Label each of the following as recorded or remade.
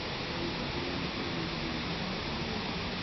recorded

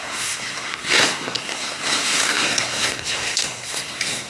remade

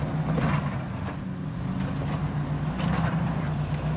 recorded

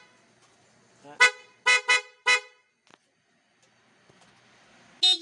recorded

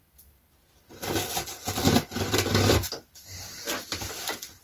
recorded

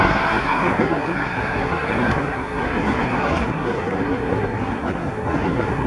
remade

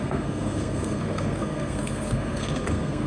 remade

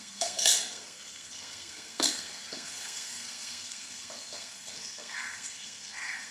remade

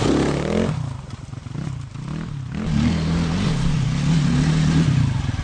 recorded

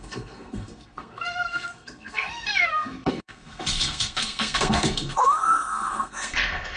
remade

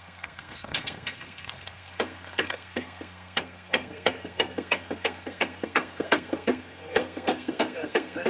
remade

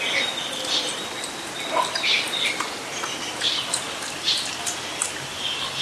recorded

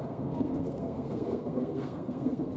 remade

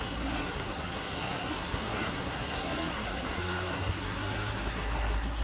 remade